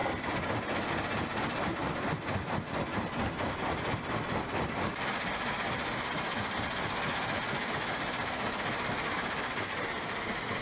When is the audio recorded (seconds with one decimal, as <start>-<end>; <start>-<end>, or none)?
0.0-10.6